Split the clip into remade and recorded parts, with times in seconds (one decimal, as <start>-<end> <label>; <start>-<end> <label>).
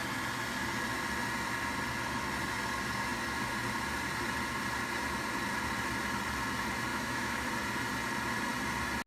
0.0-6.9 recorded; 6.9-7.5 remade; 7.5-9.1 recorded